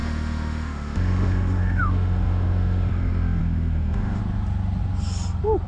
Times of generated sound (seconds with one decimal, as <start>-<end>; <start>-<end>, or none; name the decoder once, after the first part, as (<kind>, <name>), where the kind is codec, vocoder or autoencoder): 0.0-4.2 (autoencoder, DAC-VAE)